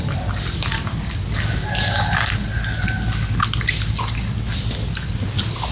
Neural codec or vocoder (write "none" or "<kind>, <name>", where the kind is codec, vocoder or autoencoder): none